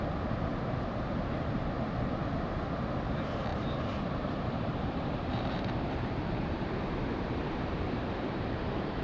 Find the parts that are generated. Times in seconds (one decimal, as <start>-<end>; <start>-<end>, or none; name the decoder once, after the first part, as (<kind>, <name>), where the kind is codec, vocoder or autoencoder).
3.5-9.0 (vocoder, BigVGAN v2)